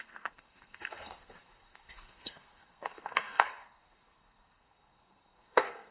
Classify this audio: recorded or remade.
remade